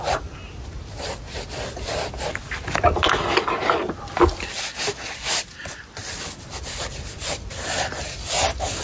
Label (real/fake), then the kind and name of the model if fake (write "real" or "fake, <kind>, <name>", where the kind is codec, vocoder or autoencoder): real